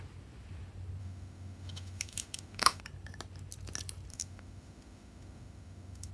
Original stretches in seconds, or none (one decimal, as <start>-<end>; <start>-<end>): 0.0-1.0; 2.8-4.1